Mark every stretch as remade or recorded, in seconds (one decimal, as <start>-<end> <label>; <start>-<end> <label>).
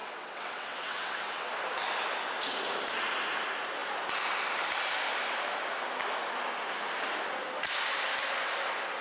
0.0-1.5 remade; 1.5-9.0 recorded